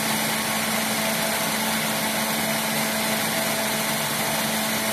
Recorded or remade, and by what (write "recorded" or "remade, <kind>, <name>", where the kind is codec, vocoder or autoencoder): recorded